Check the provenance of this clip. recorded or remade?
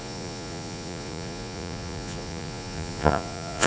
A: remade